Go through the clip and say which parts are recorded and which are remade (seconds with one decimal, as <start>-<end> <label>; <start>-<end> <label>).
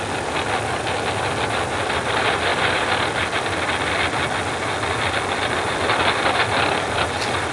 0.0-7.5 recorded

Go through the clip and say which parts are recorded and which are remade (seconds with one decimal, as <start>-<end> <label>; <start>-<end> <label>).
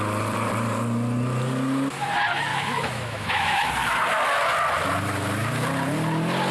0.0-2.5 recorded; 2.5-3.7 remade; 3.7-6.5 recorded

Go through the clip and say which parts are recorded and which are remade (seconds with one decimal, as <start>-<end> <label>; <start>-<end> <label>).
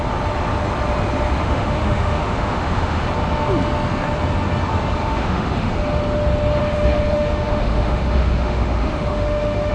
0.0-1.4 recorded; 1.4-3.0 remade; 3.0-5.0 recorded; 5.0-5.7 remade; 5.7-6.6 recorded; 6.6-9.7 remade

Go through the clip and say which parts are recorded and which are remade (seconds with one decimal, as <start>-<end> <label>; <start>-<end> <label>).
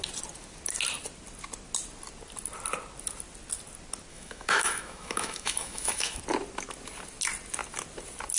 0.0-4.1 recorded; 4.1-6.2 remade; 6.2-8.4 recorded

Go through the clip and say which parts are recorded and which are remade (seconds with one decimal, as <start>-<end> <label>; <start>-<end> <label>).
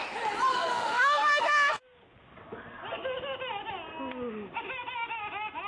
0.0-0.5 recorded; 0.5-1.7 remade; 1.7-5.7 recorded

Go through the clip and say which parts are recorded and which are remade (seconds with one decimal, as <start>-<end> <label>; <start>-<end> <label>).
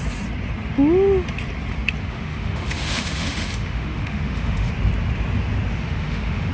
0.0-2.1 recorded; 2.1-4.7 remade; 4.7-5.7 recorded; 5.7-6.5 remade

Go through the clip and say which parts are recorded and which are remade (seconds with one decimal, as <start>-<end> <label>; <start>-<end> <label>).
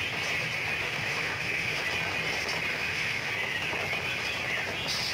0.0-0.8 recorded; 0.8-1.8 remade; 1.8-2.7 recorded; 2.7-3.3 remade; 3.3-5.1 recorded